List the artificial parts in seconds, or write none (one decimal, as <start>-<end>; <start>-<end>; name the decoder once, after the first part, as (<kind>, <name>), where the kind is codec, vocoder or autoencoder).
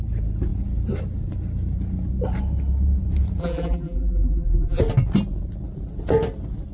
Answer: 3.4-4.8 (vocoder, BigVGAN v2)